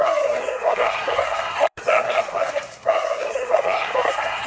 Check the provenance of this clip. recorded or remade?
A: remade